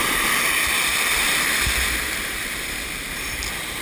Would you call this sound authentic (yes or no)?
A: yes